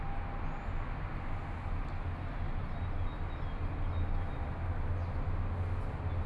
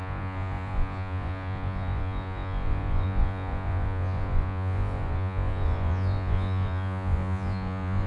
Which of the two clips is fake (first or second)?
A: second